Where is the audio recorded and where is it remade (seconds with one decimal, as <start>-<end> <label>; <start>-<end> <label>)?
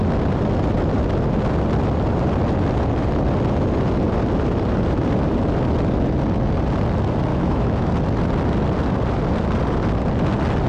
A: 0.0-7.3 recorded; 7.3-7.9 remade; 7.9-10.7 recorded